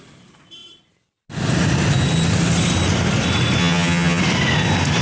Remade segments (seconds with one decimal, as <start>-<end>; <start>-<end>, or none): 3.6-4.2